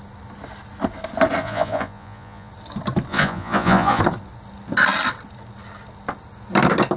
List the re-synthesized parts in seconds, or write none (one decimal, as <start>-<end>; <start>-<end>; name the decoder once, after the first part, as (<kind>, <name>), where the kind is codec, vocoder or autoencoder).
1.4-2.5 (vocoder, Vocos); 3.1-4.0